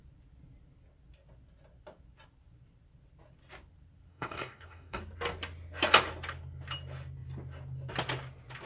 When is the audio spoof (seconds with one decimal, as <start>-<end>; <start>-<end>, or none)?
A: 4.1-5.0